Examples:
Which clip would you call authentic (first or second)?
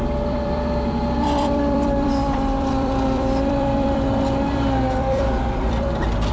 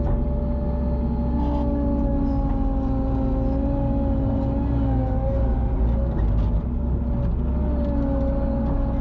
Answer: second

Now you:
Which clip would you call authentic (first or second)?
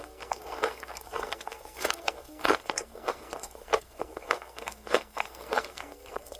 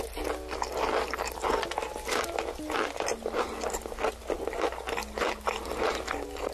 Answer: second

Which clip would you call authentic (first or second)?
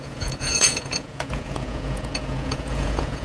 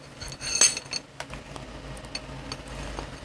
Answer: second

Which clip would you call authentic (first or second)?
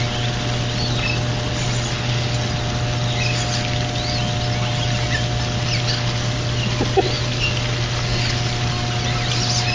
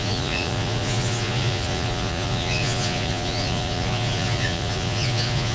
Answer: first